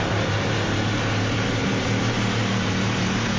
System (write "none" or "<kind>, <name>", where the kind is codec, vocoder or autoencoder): vocoder, BigVGAN v2